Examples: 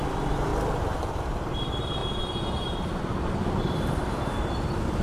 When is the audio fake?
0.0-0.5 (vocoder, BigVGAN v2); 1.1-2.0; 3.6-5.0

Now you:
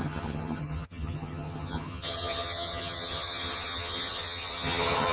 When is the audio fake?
0.0-5.1 (vocoder, HiFi-GAN)

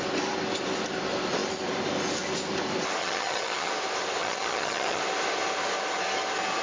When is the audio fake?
3.0-3.7 (vocoder, HiFi-GAN); 4.2-5.0

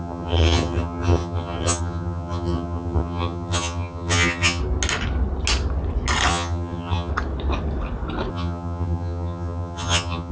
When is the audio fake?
0.0-4.6 (vocoder, HiFi-GAN); 6.3-7.1; 8.3-10.3

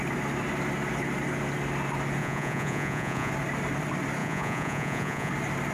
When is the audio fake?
2.2-3.3 (vocoder, Vocos); 4.2-5.3

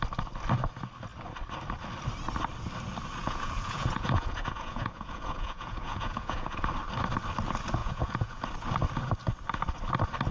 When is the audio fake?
3.2-6.6 (vocoder, Vocos); 7.8-8.4

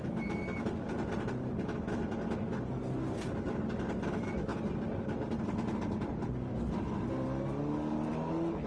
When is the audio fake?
none

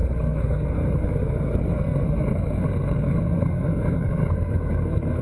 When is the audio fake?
0.0-5.2 (codec, SNAC)